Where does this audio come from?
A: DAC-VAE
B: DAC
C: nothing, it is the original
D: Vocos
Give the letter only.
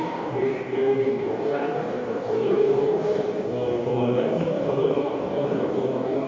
B